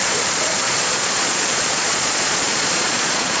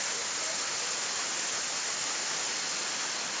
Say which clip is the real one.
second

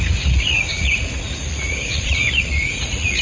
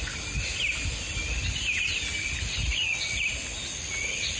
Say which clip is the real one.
second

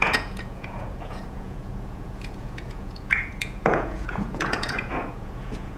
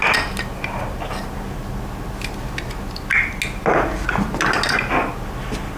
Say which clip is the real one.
second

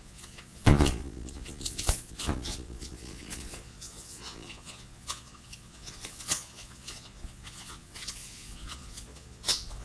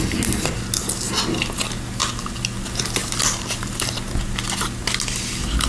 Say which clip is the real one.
second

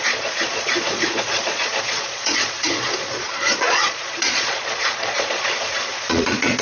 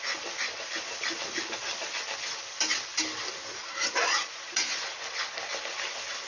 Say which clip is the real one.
second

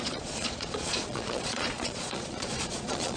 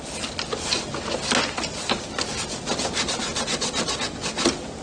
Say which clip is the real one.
second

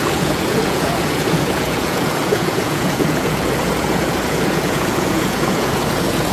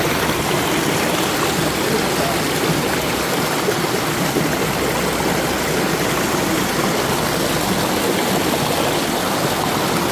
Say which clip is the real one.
second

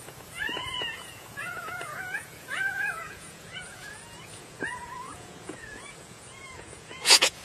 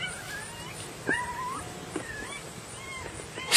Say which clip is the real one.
second